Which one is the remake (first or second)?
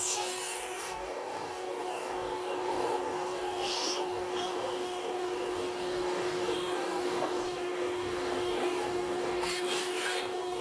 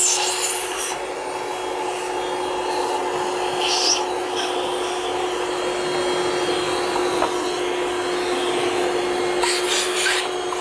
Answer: first